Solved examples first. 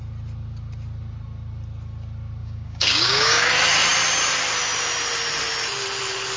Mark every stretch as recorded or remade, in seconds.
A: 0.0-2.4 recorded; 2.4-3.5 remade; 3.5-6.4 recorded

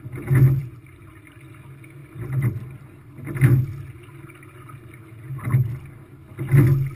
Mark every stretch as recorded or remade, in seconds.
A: 0.0-0.6 recorded; 0.6-1.4 remade; 1.4-2.0 recorded; 2.0-2.6 remade; 2.6-7.0 recorded

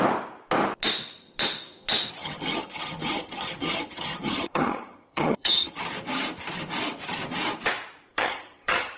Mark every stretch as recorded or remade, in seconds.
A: 0.0-2.2 recorded; 2.2-5.8 remade; 5.8-8.1 recorded; 8.1-9.0 remade